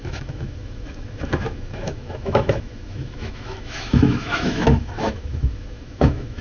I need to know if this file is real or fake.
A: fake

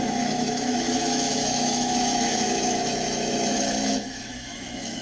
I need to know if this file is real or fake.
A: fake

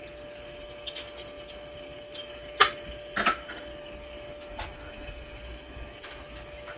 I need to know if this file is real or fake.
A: real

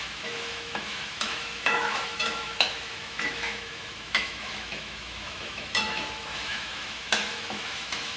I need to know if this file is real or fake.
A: fake